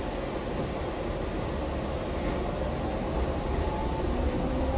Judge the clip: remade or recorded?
recorded